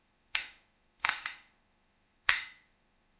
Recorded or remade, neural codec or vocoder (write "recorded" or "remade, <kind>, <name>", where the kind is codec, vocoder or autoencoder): remade, autoencoder, DAC-VAE